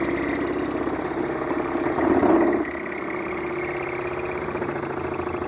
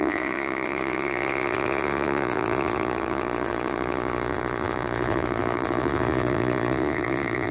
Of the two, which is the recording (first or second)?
first